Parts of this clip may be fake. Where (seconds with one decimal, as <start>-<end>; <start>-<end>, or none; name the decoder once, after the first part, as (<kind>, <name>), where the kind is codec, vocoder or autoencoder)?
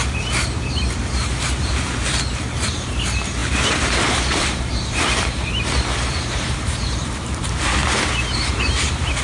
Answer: 0.0-7.8 (vocoder, BigVGAN v2); 8.5-9.2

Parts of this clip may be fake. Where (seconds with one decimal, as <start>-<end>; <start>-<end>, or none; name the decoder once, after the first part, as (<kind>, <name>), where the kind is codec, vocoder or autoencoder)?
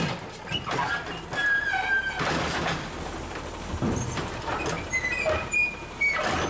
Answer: 1.4-4.0 (vocoder, BigVGAN v2); 5.6-6.5